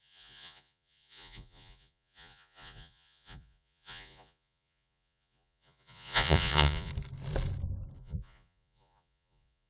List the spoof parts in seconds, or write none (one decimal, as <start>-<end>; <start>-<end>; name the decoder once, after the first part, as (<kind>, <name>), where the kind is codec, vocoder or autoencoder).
0.0-6.9 (vocoder, Vocos); 8.0-9.7

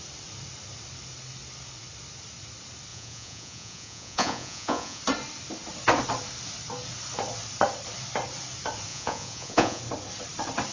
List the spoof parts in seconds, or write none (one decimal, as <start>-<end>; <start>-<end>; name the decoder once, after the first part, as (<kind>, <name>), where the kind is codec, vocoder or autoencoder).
2.9-5.0 (vocoder, Vocos); 8.9-9.8

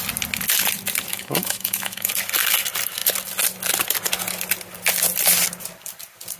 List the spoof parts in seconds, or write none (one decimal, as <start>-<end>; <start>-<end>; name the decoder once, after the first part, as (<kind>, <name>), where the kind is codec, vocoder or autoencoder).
1.1-2.1 (autoencoder, DAC-VAE)